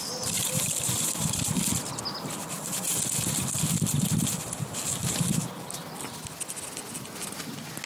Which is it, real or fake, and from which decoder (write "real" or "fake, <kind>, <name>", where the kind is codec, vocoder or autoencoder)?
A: real